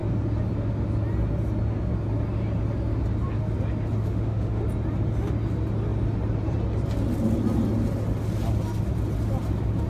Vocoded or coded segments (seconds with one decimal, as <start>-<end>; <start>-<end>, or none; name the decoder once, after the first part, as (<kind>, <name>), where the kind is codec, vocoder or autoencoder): 4.0-4.6 (autoencoder, DAC-VAE)